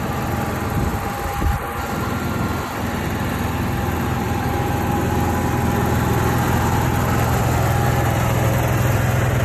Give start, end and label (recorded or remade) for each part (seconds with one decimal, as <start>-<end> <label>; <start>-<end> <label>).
0.0-9.4 recorded